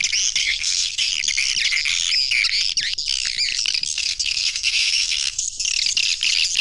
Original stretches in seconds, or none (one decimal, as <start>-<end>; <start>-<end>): 0.0-0.4; 1.1-3.9; 5.4-6.6